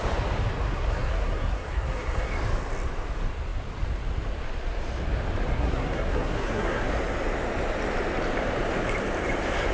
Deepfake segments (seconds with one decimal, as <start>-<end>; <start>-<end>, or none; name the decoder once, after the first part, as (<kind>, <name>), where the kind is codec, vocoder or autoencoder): 0.7-2.3 (codec, SNAC); 5.5-6.9